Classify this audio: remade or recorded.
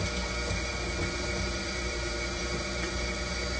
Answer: remade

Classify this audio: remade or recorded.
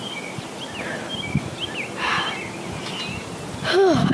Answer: recorded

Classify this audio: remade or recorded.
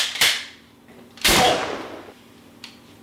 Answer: remade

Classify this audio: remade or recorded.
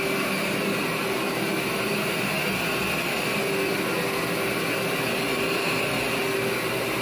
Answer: recorded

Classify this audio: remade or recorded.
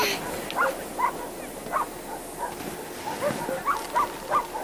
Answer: recorded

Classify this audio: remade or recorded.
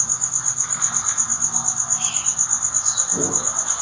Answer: recorded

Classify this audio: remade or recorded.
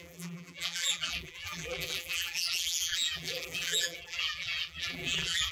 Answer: remade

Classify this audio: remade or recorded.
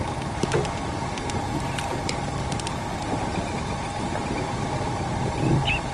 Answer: remade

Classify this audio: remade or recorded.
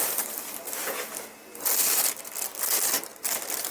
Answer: recorded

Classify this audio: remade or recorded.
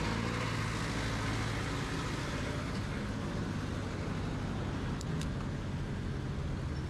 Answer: recorded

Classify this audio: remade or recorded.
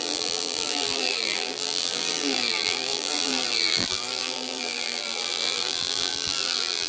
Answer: remade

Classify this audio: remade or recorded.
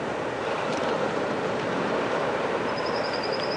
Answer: recorded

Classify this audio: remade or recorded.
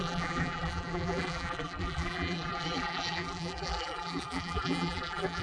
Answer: remade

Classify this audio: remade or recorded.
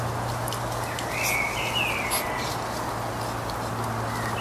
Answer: recorded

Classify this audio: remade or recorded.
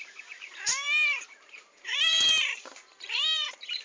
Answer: remade